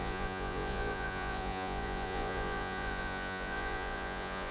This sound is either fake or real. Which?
fake